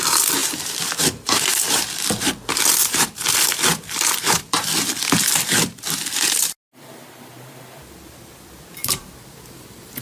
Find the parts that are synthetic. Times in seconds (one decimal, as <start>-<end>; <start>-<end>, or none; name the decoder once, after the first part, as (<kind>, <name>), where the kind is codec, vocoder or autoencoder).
0.4-1.7 (vocoder, BigVGAN v2); 2.8-5.8; 8.8-10.0